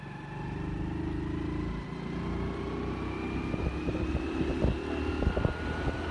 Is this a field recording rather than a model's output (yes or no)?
yes